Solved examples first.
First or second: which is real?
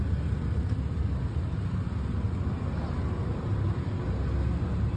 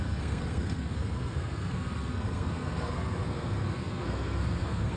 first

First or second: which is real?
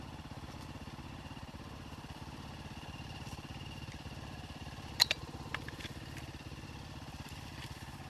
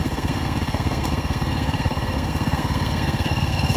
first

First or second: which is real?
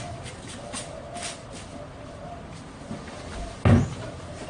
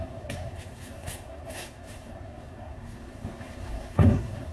first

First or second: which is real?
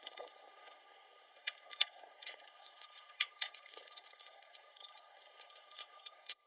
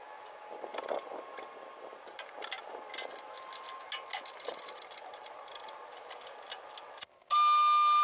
second